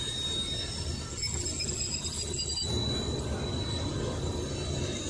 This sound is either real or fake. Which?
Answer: real